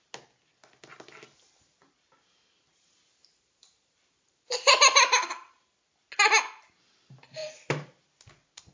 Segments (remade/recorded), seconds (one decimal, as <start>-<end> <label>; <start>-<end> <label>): 0.0-3.1 recorded; 3.1-4.7 remade; 4.7-8.7 recorded